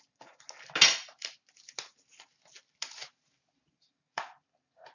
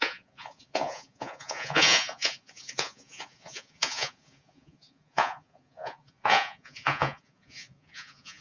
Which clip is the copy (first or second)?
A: second